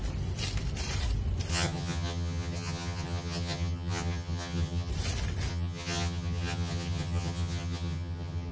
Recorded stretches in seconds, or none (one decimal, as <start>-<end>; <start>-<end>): 0.0-1.5; 4.9-5.5